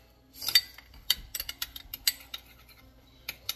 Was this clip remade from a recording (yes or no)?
no